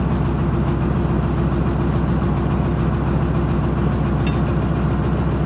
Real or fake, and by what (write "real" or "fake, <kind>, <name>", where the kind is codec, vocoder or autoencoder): real